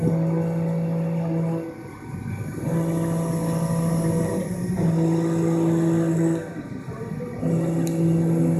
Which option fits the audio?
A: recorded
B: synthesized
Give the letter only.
A